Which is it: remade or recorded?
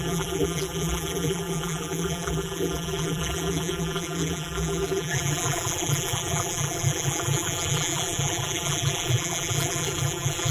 remade